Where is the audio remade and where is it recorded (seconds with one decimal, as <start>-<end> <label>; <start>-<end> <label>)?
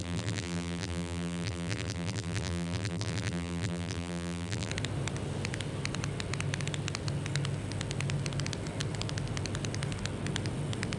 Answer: 0.0-4.7 remade; 4.7-11.0 recorded